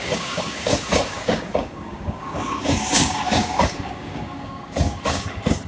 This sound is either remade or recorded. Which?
remade